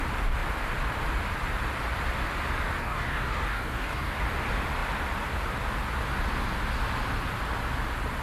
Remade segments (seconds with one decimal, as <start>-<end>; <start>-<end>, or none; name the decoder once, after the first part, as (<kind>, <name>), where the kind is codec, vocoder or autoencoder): 2.8-4.2 (codec, DAC)